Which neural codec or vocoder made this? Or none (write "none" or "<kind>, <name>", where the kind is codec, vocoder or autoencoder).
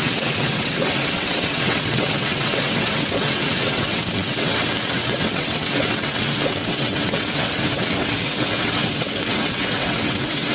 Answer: vocoder, WaveNeXt